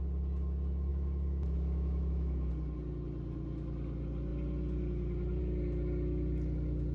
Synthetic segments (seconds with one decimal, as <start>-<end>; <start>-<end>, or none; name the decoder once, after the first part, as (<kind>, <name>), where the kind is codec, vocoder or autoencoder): 0.9-2.5 (autoencoder, DAC-VAE)